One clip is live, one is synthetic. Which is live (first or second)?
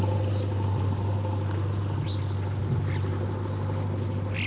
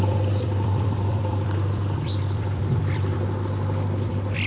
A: first